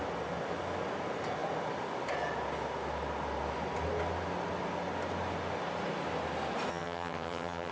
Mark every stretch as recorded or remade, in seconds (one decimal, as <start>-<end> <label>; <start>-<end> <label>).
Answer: 0.0-6.7 recorded; 6.7-7.7 remade